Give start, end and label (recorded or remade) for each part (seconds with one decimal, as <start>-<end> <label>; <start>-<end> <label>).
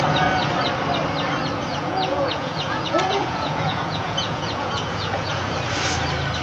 0.0-1.7 recorded; 1.7-5.5 remade; 5.5-6.4 recorded